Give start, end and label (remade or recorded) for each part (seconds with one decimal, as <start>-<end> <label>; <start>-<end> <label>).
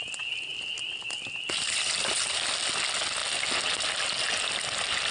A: 0.0-5.1 recorded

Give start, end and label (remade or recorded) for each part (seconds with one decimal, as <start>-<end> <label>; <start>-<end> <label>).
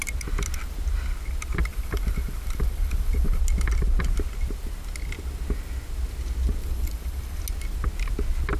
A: 0.0-1.7 recorded; 1.7-3.4 remade; 3.4-6.6 recorded; 6.6-7.4 remade; 7.4-8.6 recorded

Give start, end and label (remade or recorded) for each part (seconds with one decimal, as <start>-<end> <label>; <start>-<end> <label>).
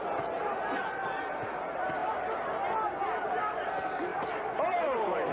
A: 0.0-4.1 recorded; 4.1-5.3 remade